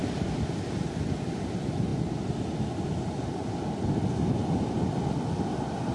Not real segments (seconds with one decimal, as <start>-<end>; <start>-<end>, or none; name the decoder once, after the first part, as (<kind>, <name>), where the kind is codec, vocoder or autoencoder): none